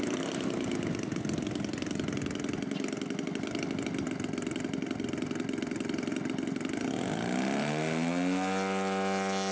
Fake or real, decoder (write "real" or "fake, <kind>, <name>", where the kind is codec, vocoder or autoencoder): real